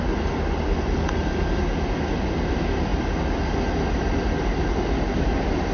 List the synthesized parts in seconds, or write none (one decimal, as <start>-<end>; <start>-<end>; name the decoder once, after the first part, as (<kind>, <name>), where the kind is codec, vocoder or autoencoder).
none